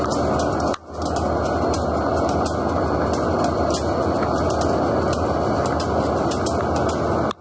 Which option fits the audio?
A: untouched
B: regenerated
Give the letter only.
A